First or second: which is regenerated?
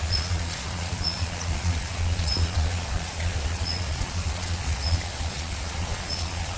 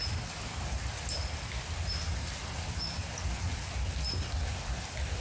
first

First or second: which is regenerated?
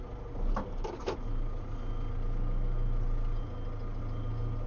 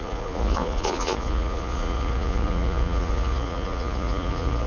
second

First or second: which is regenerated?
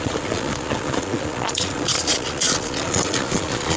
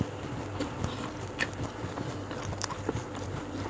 first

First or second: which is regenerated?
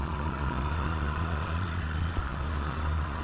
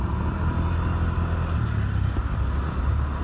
first